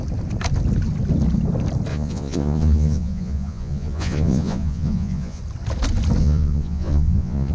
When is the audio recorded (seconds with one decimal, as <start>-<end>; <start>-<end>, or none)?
0.0-1.9; 5.4-6.2